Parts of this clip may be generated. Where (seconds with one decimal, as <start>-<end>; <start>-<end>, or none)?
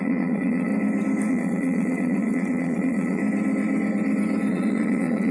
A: 0.0-0.7; 1.3-3.2; 4.5-5.3